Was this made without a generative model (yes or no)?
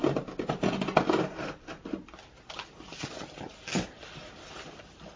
yes